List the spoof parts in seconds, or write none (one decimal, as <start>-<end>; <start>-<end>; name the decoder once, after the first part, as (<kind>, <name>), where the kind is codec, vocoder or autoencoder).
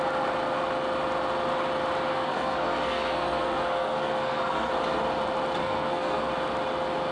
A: 2.1-4.7 (codec, SNAC); 5.6-6.3